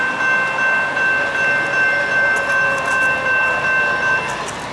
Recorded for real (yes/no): yes